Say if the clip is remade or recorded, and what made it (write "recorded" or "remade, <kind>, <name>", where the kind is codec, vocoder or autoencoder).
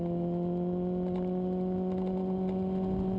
recorded